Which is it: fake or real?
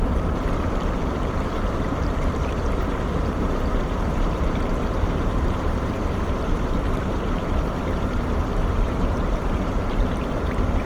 fake